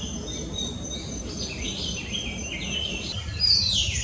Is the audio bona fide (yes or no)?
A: yes